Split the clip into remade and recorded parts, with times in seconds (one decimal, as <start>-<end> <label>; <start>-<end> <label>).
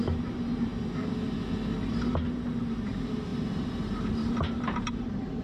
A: 0.0-0.7 remade; 0.7-2.6 recorded; 2.6-5.4 remade